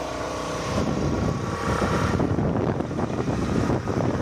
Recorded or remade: remade